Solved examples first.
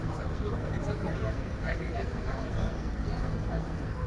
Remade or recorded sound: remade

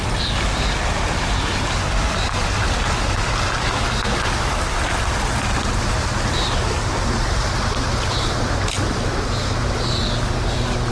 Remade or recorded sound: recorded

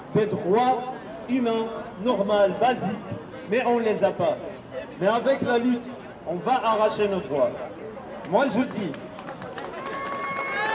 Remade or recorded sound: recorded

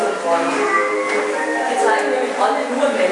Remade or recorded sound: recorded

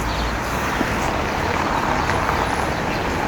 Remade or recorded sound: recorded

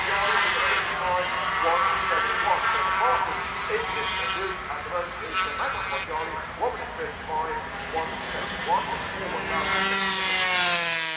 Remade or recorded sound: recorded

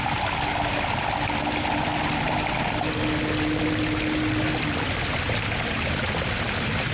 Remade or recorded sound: recorded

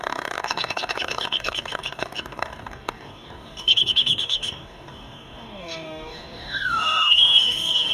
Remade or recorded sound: remade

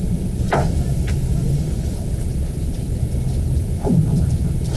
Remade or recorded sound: remade